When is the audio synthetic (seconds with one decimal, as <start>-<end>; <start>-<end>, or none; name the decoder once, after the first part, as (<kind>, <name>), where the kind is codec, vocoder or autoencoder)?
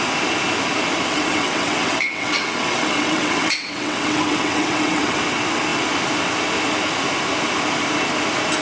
1.1-5.2 (vocoder, WaveNeXt)